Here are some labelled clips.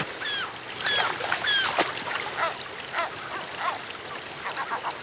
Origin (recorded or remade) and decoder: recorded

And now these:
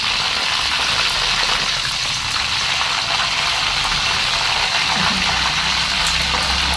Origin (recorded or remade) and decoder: recorded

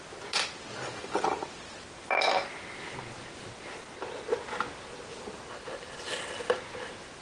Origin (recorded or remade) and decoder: recorded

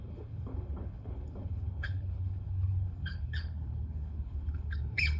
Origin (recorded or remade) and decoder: remade, codec, HILCodec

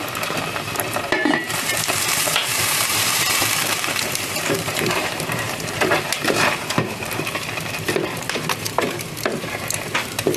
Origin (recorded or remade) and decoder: remade, vocoder, BigVGAN v2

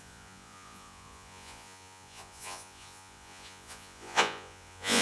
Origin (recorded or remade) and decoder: remade, vocoder, Vocos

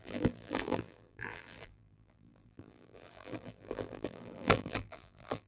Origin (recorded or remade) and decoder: remade, vocoder, BigVGAN v2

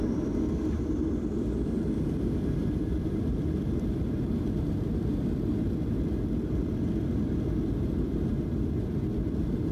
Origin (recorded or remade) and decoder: remade, vocoder, BigVGAN v2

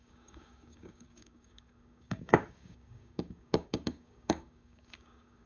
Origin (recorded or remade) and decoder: remade, codec, DAC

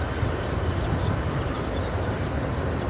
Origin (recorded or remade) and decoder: remade, vocoder, BigVGAN v2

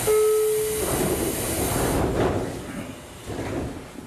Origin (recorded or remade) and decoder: recorded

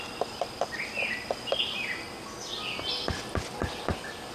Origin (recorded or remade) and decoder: recorded